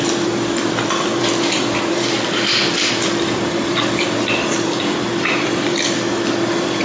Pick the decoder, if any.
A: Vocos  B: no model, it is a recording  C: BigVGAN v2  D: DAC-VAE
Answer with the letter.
C